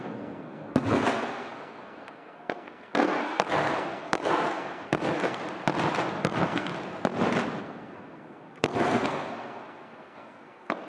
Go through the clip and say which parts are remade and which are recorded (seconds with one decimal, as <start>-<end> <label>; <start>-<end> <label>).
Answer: 0.0-5.4 remade; 5.4-6.2 recorded; 6.2-6.7 remade; 6.7-7.6 recorded; 7.6-10.9 remade